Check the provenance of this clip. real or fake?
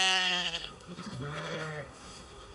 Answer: fake